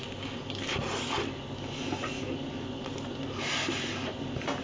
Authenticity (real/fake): real